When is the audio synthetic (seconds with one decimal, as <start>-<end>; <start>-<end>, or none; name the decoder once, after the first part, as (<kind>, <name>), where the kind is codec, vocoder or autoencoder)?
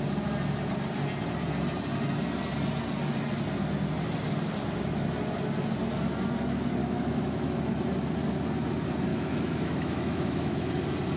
6.8-7.6 (autoencoder, DAC-VAE); 9.1-10.7